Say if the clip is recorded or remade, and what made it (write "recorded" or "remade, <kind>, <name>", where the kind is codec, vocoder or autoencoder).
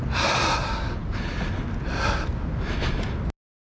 recorded